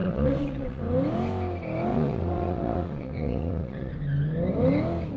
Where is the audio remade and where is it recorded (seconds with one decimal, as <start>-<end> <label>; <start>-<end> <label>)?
0.0-0.8 remade; 0.8-1.9 recorded; 1.9-3.9 remade; 3.9-5.2 recorded